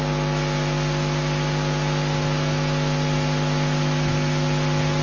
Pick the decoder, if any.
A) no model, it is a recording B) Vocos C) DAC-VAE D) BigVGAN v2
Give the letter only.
A